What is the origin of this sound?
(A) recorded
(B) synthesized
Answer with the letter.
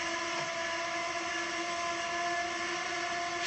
A